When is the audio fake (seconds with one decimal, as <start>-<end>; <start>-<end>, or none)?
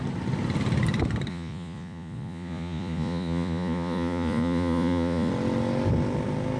1.3-5.3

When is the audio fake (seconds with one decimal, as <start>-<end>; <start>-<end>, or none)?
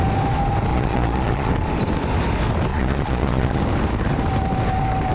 0.7-1.5; 2.7-3.6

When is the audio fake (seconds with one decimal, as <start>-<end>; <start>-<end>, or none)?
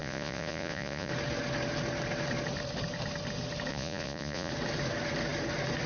0.0-1.1; 3.7-4.5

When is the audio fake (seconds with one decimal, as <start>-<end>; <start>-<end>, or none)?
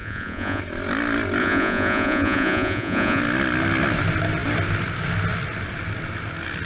0.0-0.6; 1.4-3.2